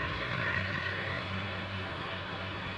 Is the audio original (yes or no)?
no